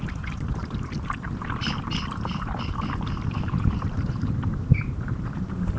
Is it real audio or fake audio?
fake